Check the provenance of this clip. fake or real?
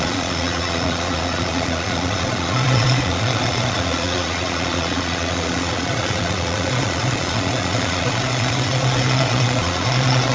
fake